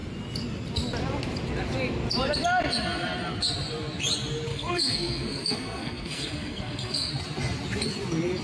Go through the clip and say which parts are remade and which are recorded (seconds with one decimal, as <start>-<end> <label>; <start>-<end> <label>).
0.0-4.5 recorded; 4.5-7.1 remade; 7.1-8.4 recorded